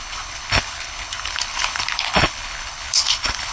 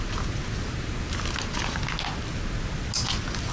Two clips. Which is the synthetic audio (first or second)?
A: first